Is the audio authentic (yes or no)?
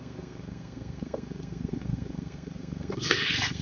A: no